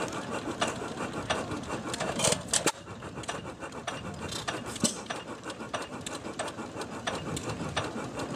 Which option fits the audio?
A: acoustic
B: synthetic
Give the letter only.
A